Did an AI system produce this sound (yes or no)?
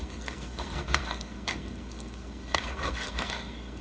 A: yes